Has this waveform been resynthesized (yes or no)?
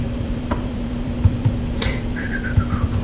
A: yes